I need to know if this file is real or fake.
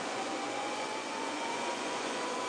fake